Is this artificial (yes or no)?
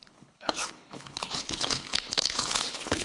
yes